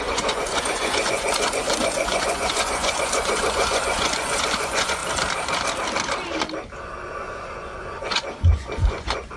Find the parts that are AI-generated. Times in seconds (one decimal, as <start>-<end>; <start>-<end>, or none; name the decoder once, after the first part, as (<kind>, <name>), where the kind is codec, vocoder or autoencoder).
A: 0.0-5.0 (vocoder, Vocos); 7.1-9.4